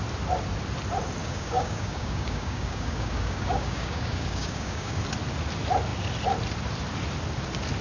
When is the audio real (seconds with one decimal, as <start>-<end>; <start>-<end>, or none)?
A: 0.0-1.2; 5.0-7.8